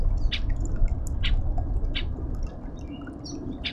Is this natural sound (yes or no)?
yes